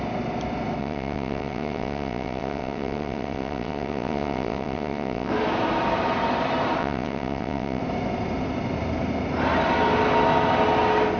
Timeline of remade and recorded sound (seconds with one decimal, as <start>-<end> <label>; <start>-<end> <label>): 0.0-0.8 recorded; 0.8-5.3 remade; 5.3-6.8 recorded; 6.8-7.8 remade; 7.8-11.2 recorded